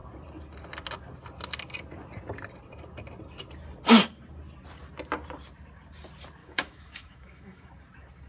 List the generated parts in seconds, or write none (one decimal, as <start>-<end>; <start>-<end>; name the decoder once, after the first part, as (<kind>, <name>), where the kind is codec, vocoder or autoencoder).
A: 6.4-7.7 (autoencoder, DAC-VAE)